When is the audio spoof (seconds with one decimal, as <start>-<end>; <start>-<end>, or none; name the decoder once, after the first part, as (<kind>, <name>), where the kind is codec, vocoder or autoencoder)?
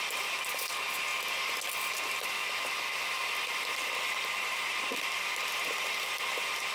0.0-1.1 (vocoder, BigVGAN v2); 2.2-6.7